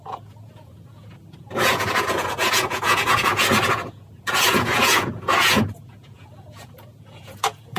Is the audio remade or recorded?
remade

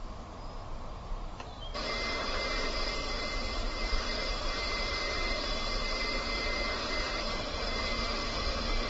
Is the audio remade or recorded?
remade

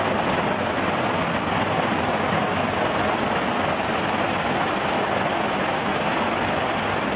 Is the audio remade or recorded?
recorded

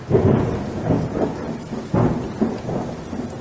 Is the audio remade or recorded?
recorded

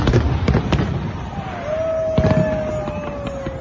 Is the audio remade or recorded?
recorded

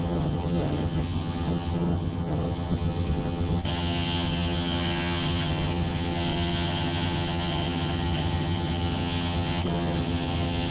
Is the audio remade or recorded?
remade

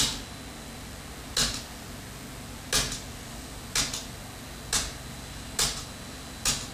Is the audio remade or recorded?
recorded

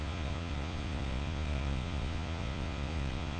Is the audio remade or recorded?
remade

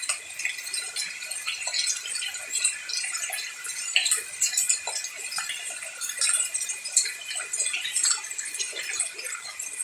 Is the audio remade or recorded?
recorded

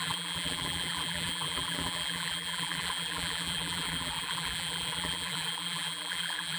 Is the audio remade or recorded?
remade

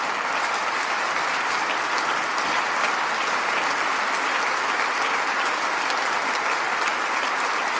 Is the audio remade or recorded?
recorded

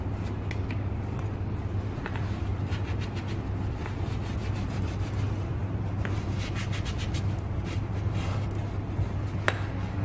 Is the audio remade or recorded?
recorded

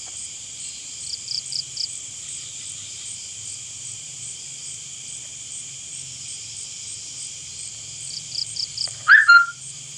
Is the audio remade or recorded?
remade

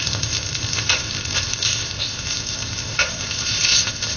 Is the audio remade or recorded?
remade